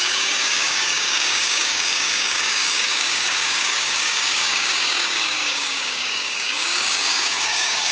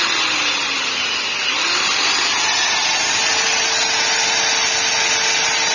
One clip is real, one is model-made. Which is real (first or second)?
second